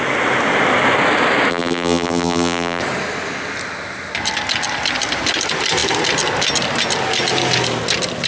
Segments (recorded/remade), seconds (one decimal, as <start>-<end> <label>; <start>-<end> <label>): 0.0-1.5 recorded; 1.5-2.8 remade; 2.8-8.3 recorded